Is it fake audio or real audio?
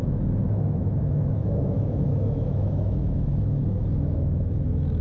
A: fake